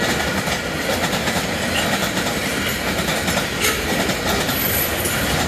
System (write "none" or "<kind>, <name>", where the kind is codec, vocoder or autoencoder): none